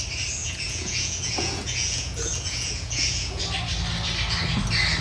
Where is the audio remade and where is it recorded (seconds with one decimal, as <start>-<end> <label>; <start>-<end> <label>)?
0.0-0.4 recorded; 0.4-3.4 remade; 3.4-5.0 recorded